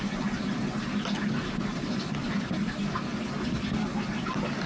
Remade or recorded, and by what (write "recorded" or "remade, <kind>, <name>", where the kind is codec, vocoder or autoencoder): recorded